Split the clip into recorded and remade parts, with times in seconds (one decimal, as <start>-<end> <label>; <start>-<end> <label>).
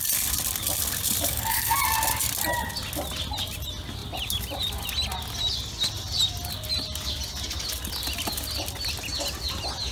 0.0-1.3 recorded; 1.3-1.8 remade; 1.8-9.9 recorded